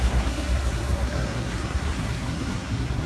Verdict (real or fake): fake